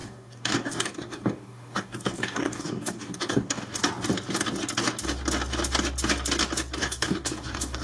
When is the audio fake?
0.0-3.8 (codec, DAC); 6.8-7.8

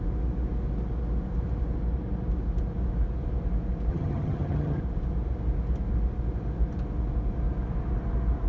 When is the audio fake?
3.9-4.8 (vocoder, HiFi-GAN)

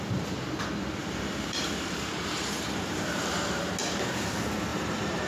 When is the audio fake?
1.0-3.6 (vocoder, BigVGAN v2); 4.7-5.3

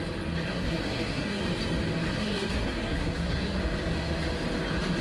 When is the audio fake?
0.5-1.4 (codec, SNAC); 2.1-3.6